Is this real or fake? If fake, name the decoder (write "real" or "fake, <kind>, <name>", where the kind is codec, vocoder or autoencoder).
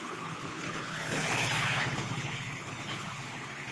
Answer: fake, codec, HILCodec